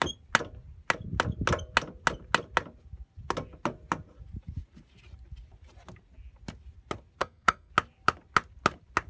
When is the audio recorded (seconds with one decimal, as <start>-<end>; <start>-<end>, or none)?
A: 0.0-7.2; 7.7-9.1